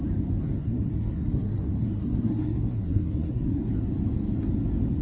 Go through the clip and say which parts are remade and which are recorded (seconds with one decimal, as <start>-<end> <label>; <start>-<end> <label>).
0.0-0.6 recorded; 0.6-3.6 remade; 3.6-5.0 recorded